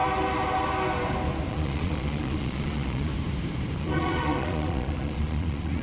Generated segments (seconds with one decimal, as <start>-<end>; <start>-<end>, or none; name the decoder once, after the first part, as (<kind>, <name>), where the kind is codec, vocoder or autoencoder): 1.5-3.1 (vocoder, Vocos); 3.8-5.8